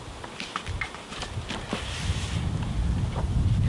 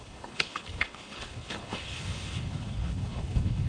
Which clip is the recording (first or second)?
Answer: first